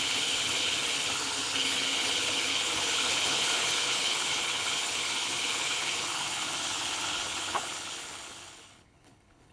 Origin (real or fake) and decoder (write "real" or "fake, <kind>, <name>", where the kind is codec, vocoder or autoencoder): fake, codec, HILCodec